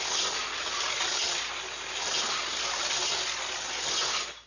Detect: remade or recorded recorded